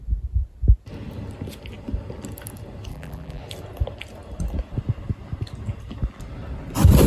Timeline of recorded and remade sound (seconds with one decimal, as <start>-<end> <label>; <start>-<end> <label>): 0.0-2.9 recorded; 2.9-3.4 remade; 3.4-7.1 recorded